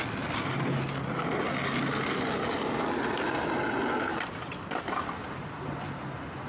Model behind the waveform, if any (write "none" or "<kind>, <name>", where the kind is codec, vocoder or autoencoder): none